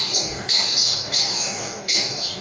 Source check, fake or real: fake